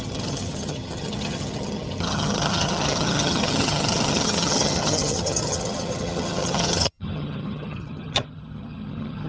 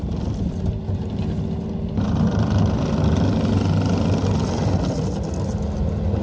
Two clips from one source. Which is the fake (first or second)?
first